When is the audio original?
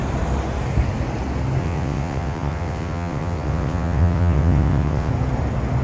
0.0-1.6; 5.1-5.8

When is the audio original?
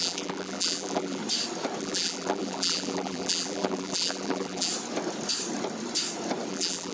1.2-1.8; 4.7-6.5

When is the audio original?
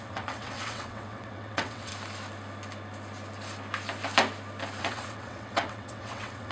1.9-4.8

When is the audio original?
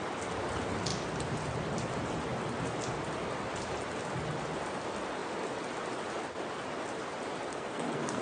0.0-7.5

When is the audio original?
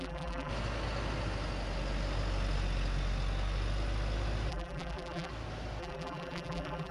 0.5-4.5; 5.3-5.8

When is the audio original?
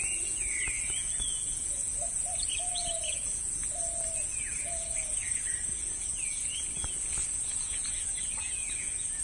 none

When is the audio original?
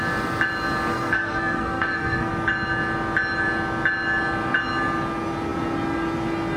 0.0-0.9; 2.3-6.6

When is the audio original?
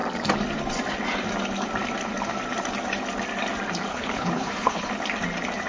0.0-3.9; 4.9-5.7